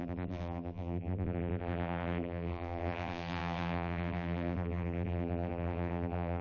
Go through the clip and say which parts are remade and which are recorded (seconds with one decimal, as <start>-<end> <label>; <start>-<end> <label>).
0.0-6.4 remade